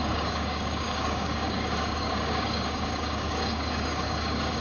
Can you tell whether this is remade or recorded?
remade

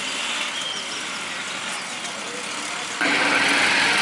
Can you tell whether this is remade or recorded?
recorded